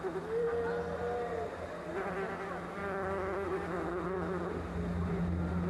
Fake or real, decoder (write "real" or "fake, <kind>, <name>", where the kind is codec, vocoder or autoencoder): real